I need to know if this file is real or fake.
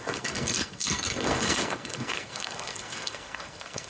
fake